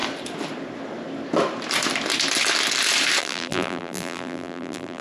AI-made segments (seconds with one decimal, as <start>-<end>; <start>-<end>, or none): 3.2-5.0